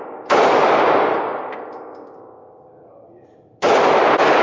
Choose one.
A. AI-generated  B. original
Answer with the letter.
B